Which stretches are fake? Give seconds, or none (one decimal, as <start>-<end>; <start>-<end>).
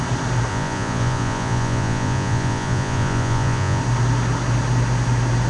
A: 0.5-3.8